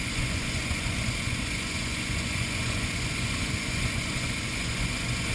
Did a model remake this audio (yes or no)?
yes